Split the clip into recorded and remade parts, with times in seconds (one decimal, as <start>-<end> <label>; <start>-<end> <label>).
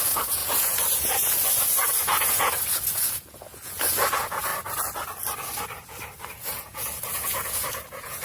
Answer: 0.0-4.5 remade; 4.5-6.3 recorded; 6.3-8.2 remade